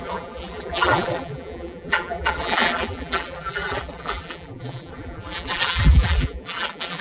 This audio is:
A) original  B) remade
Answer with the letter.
B